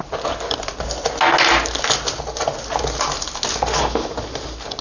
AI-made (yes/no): no